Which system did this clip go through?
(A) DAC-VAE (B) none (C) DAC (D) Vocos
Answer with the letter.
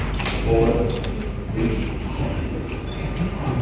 B